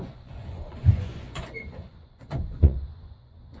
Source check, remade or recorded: remade